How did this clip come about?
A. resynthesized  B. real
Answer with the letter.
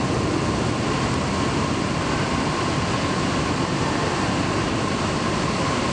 B